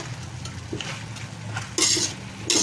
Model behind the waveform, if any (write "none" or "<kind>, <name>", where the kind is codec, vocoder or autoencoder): none